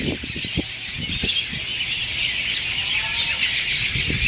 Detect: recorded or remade recorded